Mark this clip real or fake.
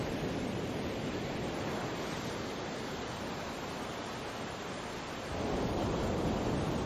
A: real